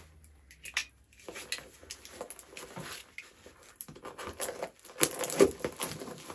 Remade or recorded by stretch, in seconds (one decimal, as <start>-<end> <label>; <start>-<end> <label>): 0.0-6.3 recorded